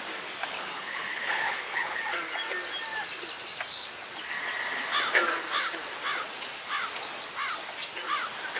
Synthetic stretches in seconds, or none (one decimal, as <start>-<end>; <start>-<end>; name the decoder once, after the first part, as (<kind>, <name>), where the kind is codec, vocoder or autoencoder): 0.4-2.0 (codec, HILCodec)